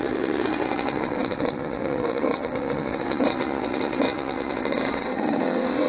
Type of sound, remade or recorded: remade